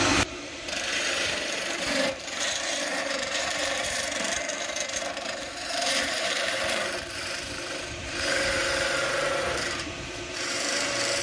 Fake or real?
fake